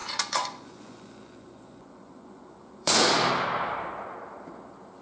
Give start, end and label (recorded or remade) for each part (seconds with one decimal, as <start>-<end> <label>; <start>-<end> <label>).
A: 0.0-3.0 remade; 3.0-5.0 recorded